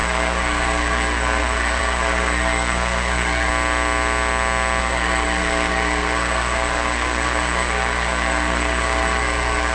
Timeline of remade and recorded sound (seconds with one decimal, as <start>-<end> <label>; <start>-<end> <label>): 0.0-3.5 remade; 3.5-4.8 recorded; 4.8-9.7 remade